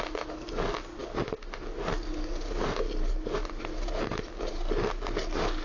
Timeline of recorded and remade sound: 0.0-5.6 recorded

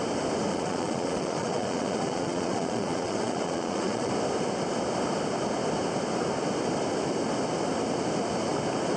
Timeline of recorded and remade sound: 0.0-0.5 recorded; 0.5-4.1 remade; 4.1-9.0 recorded

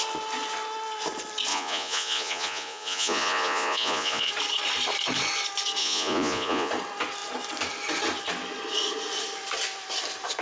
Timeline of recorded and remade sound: 0.0-1.5 recorded; 1.5-4.3 remade; 4.3-5.8 recorded; 5.8-6.7 remade; 6.7-10.4 recorded

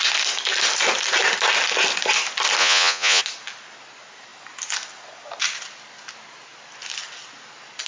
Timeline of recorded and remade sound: 0.0-2.6 recorded; 2.6-3.2 remade; 3.2-7.9 recorded